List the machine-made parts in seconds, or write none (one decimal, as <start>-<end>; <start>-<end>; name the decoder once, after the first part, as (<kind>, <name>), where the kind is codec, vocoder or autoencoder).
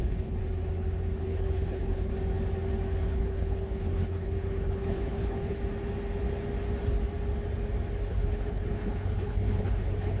0.0-0.4 (codec, HILCodec); 1.2-2.1; 3.0-5.6; 8.1-10.2